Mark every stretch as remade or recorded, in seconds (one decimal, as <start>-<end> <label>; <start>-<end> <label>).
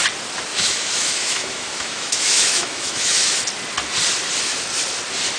0.0-0.5 recorded; 0.5-3.4 remade; 3.4-5.4 recorded